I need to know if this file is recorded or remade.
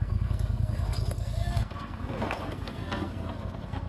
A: remade